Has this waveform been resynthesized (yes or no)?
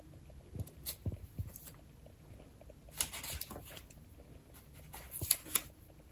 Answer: no